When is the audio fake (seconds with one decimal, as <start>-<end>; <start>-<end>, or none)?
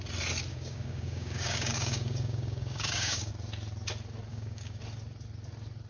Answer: 0.5-3.3; 4.3-4.8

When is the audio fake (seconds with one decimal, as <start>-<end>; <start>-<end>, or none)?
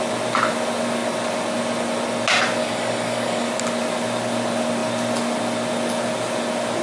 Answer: 2.6-3.5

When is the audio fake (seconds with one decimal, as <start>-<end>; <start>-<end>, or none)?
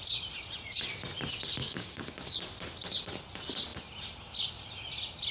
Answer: 1.6-2.4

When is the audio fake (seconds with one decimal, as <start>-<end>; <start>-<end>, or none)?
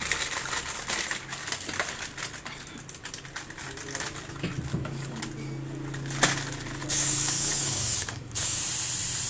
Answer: 4.7-5.2; 6.8-8.6